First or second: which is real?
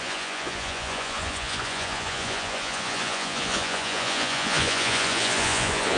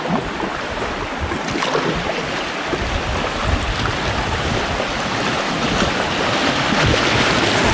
second